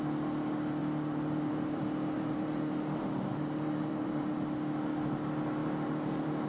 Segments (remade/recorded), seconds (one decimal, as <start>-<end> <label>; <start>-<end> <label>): 0.0-0.8 recorded; 0.8-4.3 remade; 4.3-5.6 recorded; 5.6-6.5 remade